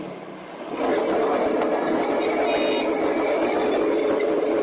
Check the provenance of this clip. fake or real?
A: real